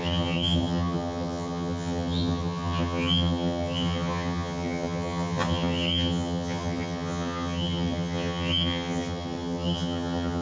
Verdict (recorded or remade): remade